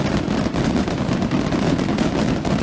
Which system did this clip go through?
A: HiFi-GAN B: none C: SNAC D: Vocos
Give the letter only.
B